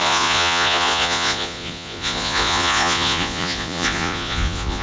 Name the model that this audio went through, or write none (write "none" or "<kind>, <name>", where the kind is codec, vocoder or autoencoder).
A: vocoder, Vocos